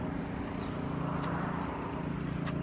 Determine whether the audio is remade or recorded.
recorded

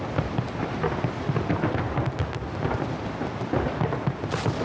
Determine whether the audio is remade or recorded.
recorded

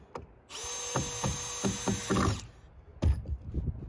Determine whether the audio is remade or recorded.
recorded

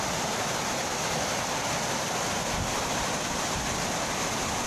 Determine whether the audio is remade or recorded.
recorded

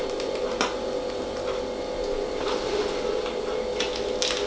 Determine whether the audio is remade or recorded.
recorded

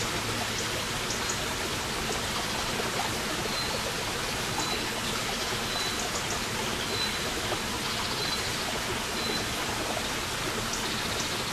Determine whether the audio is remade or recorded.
recorded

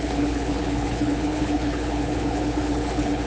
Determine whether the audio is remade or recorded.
remade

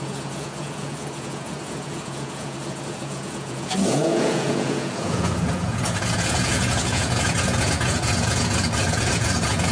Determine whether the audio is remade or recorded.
remade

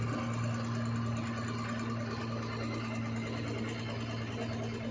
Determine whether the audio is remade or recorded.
recorded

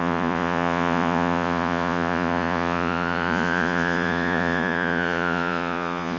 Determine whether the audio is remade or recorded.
remade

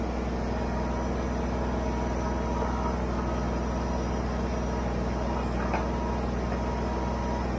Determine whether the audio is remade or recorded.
recorded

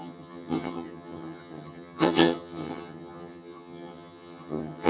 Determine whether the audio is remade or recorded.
remade